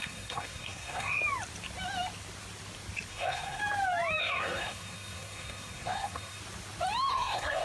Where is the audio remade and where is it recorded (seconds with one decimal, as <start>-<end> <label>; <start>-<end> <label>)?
0.0-1.2 remade; 1.2-3.1 recorded; 3.1-3.6 remade; 3.6-4.2 recorded; 4.2-6.4 remade; 6.4-7.1 recorded; 7.1-7.6 remade